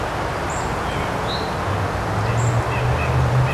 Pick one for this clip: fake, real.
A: real